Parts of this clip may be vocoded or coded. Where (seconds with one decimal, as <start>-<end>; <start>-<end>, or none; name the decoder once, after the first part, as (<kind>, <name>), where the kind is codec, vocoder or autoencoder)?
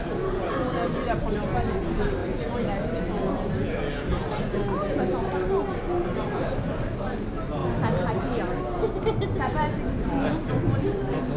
none